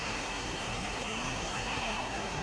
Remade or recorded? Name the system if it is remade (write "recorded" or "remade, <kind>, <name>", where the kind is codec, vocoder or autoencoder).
remade, codec, SNAC